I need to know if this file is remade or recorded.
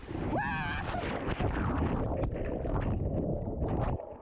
recorded